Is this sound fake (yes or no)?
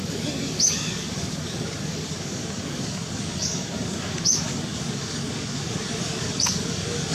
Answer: yes